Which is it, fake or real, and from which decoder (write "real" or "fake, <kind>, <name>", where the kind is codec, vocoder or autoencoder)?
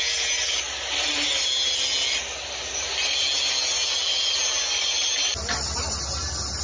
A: real